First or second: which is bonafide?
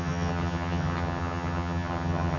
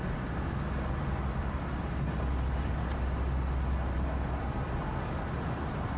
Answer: second